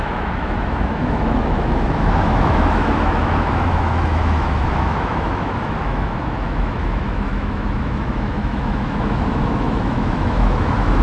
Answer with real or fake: fake